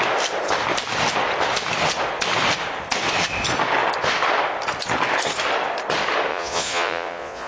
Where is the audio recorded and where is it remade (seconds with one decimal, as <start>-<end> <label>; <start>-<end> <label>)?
0.0-6.3 recorded; 6.3-7.5 remade